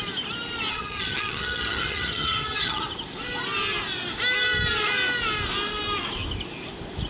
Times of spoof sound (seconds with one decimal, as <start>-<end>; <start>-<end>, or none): 0.7-2.8